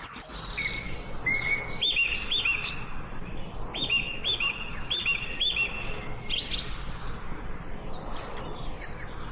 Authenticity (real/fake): real